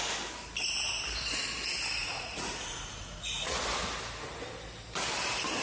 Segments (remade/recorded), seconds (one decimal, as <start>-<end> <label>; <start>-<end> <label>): 0.0-2.0 recorded; 2.0-3.6 remade; 3.6-5.6 recorded